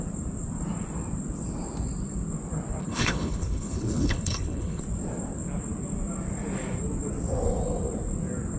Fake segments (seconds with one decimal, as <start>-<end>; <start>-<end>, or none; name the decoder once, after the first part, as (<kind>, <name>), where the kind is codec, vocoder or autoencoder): 2.8-4.8 (codec, HILCodec)